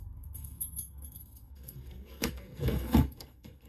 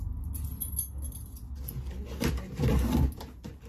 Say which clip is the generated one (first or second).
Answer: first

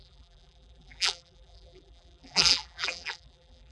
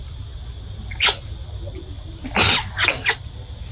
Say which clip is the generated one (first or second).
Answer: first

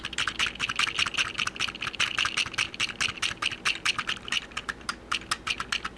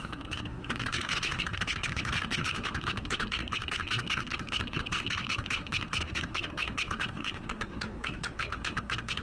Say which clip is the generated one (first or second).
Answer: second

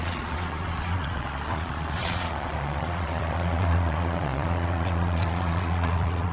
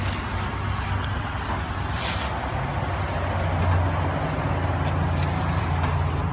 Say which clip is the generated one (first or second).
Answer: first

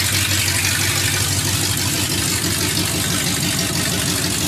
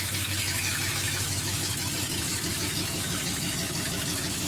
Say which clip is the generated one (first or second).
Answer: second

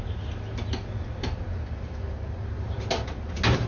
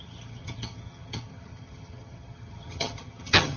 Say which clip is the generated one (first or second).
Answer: second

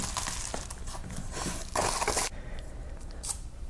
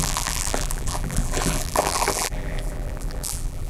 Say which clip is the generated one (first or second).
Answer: second